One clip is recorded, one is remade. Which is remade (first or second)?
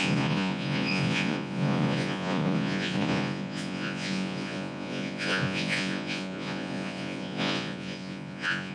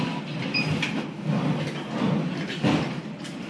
first